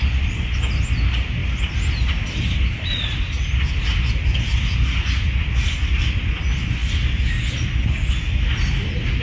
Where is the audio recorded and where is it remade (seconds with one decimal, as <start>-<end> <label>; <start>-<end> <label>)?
0.0-9.2 recorded